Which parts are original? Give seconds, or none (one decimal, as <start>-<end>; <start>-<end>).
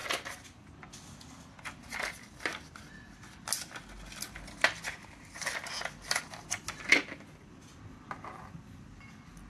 0.0-9.5